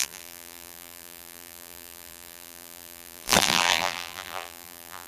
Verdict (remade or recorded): remade